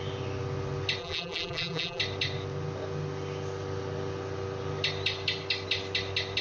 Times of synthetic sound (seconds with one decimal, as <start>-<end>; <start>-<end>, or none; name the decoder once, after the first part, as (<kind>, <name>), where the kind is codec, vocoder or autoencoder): 1.0-2.0 (vocoder, BigVGAN v2)